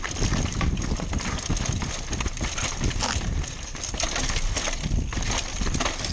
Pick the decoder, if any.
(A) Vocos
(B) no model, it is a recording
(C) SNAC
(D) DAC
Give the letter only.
B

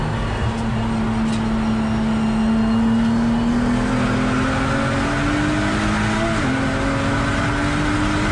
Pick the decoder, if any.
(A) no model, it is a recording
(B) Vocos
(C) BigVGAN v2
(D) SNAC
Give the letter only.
A